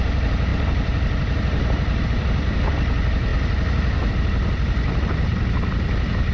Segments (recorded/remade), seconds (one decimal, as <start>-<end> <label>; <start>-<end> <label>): 0.0-5.3 remade; 5.3-6.3 recorded